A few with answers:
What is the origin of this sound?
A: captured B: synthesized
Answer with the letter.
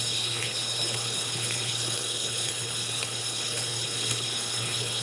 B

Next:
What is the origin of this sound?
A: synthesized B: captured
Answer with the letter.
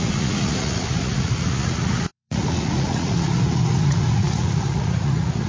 A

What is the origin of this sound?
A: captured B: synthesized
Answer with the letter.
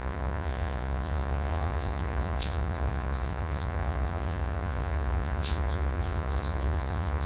B